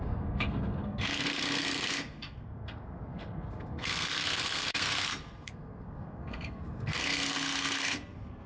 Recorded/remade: remade